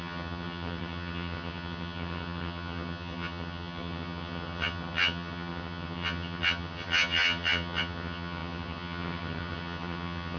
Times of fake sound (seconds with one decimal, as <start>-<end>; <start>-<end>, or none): 0.0-10.4